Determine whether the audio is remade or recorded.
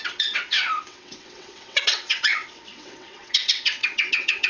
remade